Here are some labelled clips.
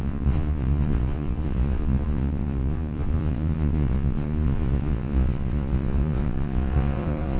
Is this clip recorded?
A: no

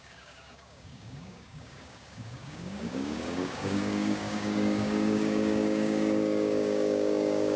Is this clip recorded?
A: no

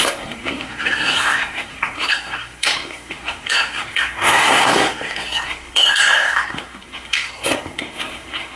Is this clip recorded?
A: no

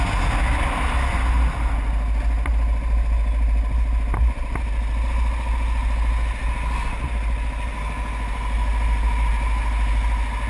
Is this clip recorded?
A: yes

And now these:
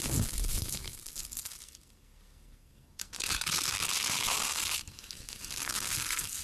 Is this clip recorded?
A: no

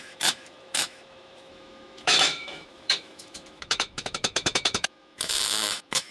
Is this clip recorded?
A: no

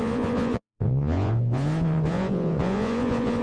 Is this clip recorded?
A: no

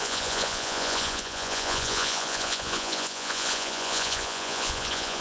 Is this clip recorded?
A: no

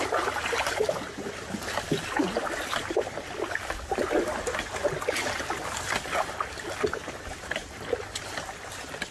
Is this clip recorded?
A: yes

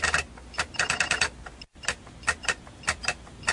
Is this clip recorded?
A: yes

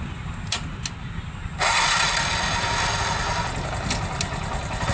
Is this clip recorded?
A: yes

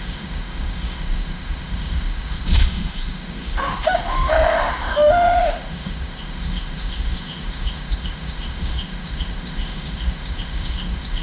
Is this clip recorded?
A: no